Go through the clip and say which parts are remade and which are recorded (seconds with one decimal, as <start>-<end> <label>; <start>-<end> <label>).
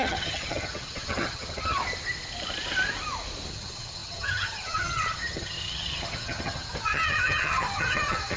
0.0-1.8 remade; 1.8-3.5 recorded; 3.5-8.4 remade